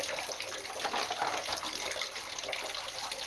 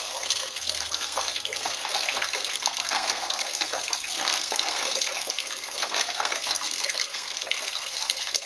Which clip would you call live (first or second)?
first